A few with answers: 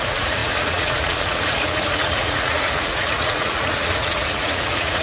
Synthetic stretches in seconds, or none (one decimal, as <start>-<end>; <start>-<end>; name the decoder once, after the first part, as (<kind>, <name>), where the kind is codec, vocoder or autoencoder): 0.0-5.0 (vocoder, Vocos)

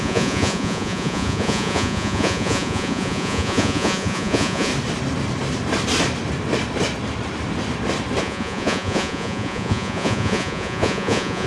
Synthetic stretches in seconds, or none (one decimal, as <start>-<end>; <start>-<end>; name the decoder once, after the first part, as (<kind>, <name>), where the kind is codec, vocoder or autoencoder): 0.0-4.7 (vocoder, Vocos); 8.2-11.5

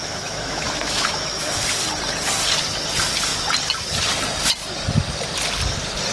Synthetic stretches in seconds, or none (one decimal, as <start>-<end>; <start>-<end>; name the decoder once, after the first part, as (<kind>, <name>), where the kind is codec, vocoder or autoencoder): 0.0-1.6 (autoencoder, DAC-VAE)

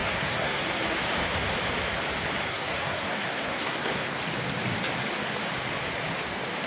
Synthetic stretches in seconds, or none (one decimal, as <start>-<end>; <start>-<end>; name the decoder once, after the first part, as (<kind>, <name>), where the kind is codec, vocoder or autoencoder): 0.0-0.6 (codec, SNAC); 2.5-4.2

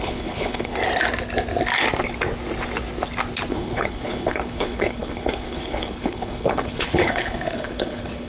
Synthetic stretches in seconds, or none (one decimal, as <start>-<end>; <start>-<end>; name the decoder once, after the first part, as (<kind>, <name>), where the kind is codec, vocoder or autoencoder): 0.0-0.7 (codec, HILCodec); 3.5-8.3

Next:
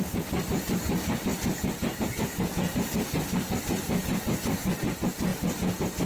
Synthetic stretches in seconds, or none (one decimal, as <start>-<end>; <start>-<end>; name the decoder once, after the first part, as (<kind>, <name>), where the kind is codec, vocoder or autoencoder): none